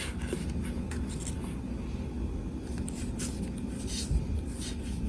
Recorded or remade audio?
recorded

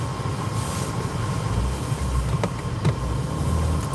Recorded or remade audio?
recorded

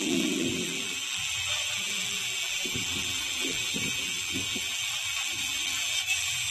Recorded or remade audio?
remade